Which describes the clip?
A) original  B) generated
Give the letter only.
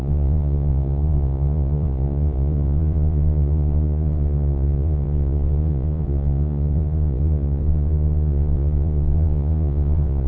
B